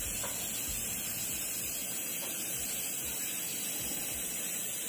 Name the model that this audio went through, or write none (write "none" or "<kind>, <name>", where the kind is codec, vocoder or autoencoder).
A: none